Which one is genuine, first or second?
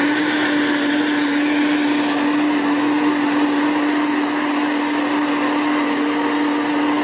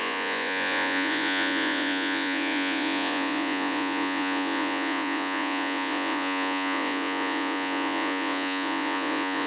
first